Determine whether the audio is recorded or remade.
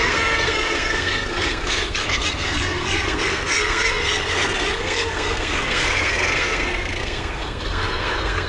remade